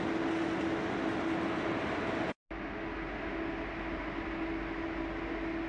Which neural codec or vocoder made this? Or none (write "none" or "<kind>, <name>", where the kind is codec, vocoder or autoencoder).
none